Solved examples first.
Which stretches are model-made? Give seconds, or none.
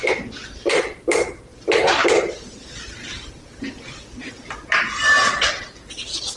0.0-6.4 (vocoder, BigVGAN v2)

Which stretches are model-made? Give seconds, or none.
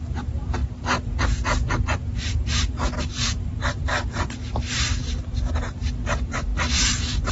0.0-6.5 (vocoder, BigVGAN v2)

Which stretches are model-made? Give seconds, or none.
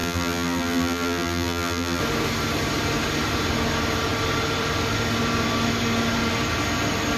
0.0-2.0 (vocoder, BigVGAN v2)